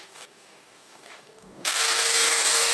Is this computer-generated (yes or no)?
yes